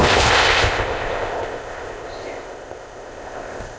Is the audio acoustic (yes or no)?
no